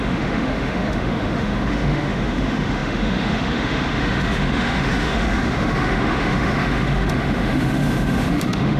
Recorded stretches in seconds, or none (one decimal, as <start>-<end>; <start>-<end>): none